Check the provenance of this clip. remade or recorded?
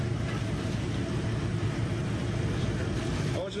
recorded